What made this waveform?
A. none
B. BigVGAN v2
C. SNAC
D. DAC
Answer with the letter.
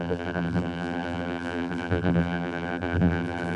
B